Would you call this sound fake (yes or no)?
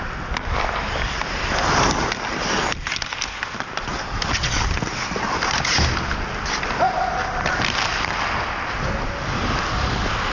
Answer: no